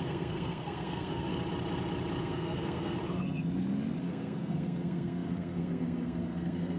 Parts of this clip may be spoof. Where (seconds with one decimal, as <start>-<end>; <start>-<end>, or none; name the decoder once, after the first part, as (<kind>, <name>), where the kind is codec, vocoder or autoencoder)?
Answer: 0.0-1.3 (codec, SNAC); 2.2-3.0; 4.0-6.8